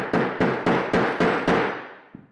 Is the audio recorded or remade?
recorded